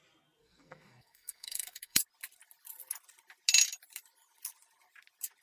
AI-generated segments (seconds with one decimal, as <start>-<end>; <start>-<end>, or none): 0.4-2.0